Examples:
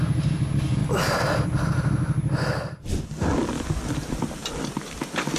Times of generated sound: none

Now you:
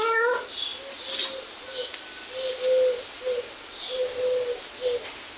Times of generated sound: none

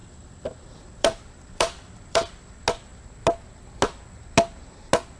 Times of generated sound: 0.0-2.3 (vocoder, BigVGAN v2)